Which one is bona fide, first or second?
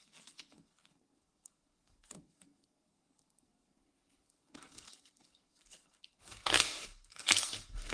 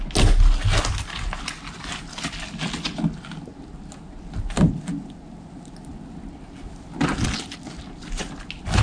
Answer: second